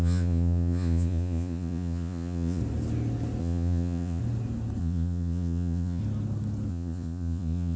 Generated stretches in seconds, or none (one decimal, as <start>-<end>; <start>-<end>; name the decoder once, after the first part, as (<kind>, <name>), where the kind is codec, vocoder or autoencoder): 0.0-2.6 (vocoder, Vocos); 3.4-4.2; 4.8-6.0; 6.7-7.8